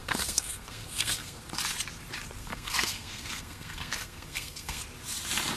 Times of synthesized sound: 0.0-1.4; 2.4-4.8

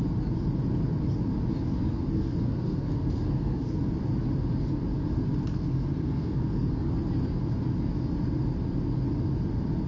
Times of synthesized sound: 1.9-3.8; 5.5-6.9

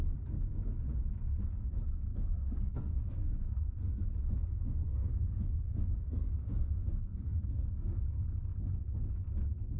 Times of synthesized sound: 2.1-4.1; 4.9-8.0